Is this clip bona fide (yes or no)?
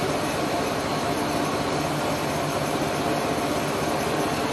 yes